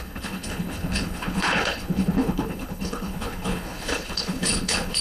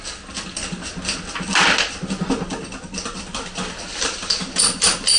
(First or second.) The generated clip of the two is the first